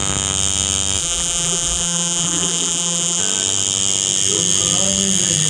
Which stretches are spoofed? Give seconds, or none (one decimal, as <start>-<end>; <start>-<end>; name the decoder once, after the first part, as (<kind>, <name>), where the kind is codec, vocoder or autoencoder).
1.0-3.2 (vocoder, BigVGAN v2)